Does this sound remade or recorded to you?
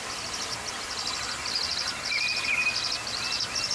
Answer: recorded